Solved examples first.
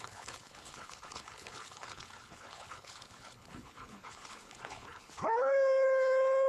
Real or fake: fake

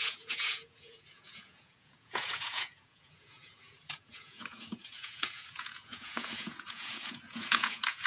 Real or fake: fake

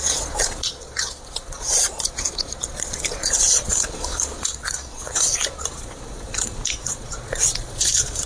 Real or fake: fake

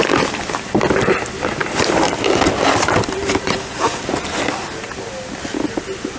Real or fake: real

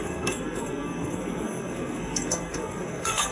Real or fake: fake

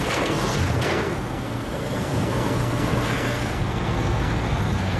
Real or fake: fake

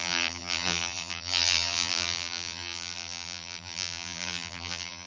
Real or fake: fake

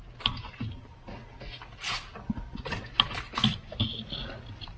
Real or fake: real